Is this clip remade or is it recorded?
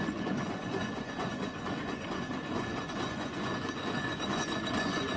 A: remade